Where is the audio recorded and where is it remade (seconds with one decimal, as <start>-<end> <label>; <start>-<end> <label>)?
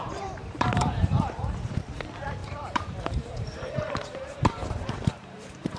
0.0-0.4 recorded; 0.4-1.7 remade; 1.7-2.4 recorded; 2.4-5.8 remade